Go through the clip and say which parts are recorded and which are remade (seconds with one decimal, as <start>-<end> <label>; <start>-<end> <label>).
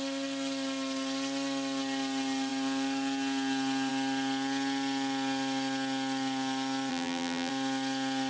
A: 0.0-6.9 recorded; 6.9-7.5 remade; 7.5-8.3 recorded